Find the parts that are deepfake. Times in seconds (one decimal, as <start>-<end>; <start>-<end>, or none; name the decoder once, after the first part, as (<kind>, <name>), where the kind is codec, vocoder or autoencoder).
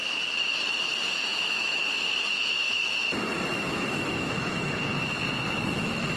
0.0-5.2 (autoencoder, DAC-VAE); 5.7-6.2